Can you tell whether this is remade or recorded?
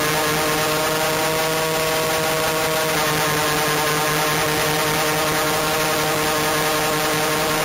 recorded